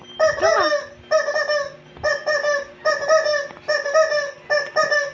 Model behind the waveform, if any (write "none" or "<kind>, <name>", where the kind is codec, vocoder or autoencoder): none